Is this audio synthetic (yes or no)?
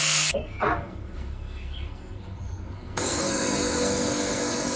yes